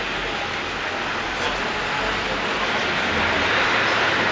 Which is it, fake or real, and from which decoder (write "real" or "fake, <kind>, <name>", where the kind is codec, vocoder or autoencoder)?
real